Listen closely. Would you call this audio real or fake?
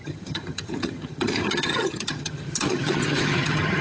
fake